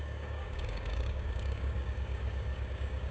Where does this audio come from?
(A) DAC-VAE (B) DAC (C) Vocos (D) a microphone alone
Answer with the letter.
B